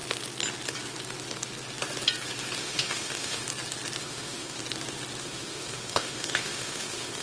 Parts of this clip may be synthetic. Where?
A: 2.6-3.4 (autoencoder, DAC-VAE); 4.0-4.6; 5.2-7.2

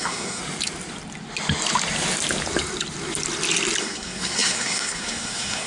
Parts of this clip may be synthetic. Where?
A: 0.0-0.4 (codec, SNAC); 3.8-5.7

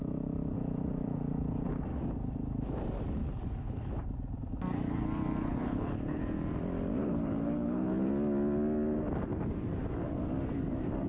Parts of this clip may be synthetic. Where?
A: 3.2-3.9 (codec, HILCodec); 5.5-6.2; 7.0-8.1

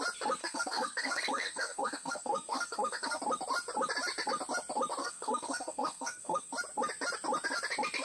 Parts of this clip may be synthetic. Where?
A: 0.4-3.2 (codec, SNAC); 5.0-6.5

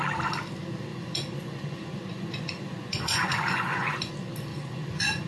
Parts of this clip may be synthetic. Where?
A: 0.9-4.1 (vocoder, Vocos); 4.5-5.3

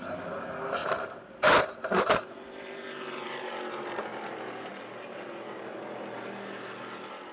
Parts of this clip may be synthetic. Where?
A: 0.8-3.6 (vocoder, BigVGAN v2); 4.1-4.7

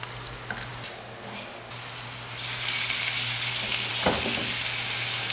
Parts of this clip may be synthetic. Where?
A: none

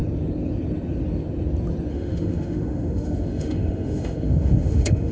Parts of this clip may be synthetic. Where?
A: 1.9-5.1 (autoencoder, DAC-VAE)